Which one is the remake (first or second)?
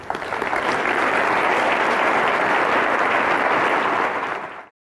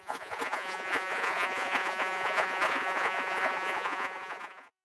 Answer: second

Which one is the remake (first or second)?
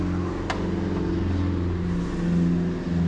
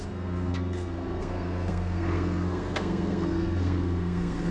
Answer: second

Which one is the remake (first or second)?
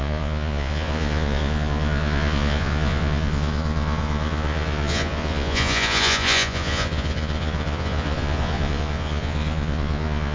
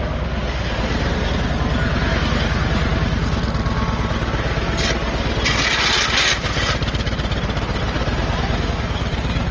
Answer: first